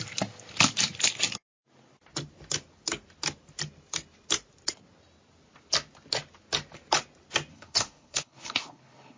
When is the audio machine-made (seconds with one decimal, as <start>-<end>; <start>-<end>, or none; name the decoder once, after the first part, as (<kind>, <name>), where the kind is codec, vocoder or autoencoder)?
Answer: 7.5-9.2 (codec, HILCodec)